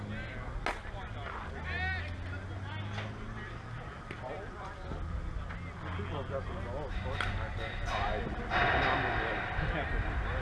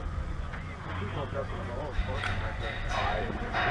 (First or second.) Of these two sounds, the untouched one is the first